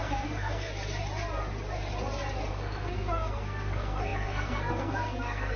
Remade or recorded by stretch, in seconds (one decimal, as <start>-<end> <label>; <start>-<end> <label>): 0.0-0.7 remade; 0.7-2.5 recorded; 2.5-5.6 remade